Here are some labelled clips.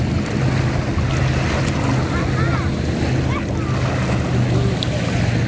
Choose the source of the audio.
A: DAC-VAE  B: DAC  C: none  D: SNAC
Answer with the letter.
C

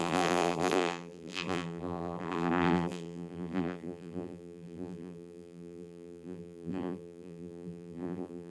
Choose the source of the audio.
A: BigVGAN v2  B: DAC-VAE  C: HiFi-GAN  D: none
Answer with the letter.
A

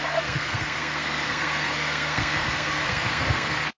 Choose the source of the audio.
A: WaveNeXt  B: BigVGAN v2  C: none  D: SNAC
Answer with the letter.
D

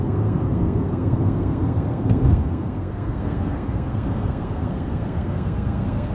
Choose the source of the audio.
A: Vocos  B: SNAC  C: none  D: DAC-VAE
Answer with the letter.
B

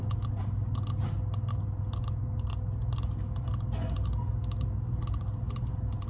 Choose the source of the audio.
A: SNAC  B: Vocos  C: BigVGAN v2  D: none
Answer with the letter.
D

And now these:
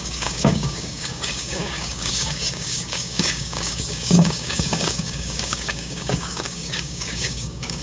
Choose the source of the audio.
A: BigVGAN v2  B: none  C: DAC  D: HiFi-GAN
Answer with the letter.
C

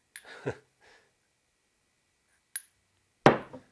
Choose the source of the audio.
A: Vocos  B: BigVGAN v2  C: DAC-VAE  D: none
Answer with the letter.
D